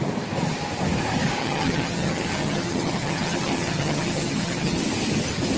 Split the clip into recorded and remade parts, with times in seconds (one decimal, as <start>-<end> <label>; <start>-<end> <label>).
0.0-1.4 recorded; 1.4-4.8 remade; 4.8-5.6 recorded